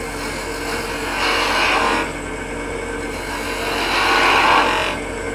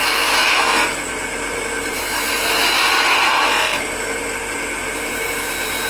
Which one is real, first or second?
first